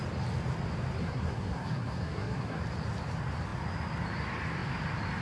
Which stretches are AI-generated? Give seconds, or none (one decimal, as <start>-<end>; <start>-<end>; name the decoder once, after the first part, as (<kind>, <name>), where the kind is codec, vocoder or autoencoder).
1.0-2.6 (codec, SNAC)